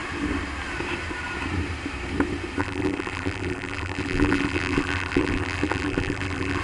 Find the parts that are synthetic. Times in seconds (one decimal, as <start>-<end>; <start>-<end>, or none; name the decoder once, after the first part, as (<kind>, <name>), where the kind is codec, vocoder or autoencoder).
2.6-6.6 (vocoder, BigVGAN v2)